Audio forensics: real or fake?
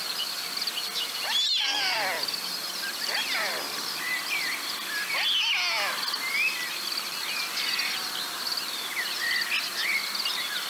real